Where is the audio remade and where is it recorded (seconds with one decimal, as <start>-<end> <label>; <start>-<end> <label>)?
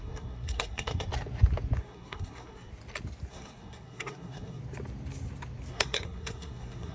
0.0-1.1 remade; 1.1-1.8 recorded; 1.8-2.7 remade; 2.7-3.3 recorded; 3.3-4.6 remade; 4.6-5.7 recorded; 5.7-6.9 remade